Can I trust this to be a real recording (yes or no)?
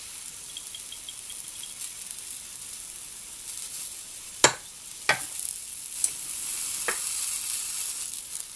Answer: yes